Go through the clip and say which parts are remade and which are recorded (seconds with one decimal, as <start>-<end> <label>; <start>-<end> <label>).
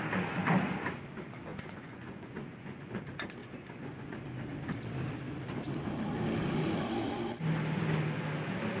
0.0-1.5 recorded; 1.5-3.0 remade; 3.0-3.4 recorded; 3.4-4.2 remade; 4.2-8.8 recorded